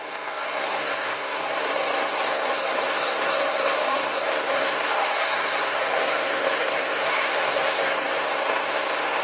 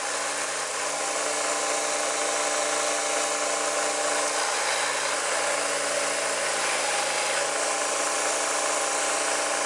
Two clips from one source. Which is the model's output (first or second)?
first